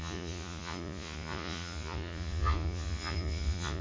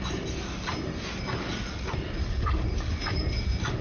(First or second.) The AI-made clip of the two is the first